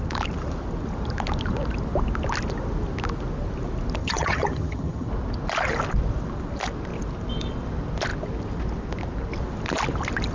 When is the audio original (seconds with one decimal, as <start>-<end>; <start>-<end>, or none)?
0.0-4.0; 5.1-10.3